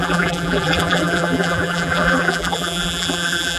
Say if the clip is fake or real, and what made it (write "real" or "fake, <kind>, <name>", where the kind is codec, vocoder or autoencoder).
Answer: fake, vocoder, BigVGAN v2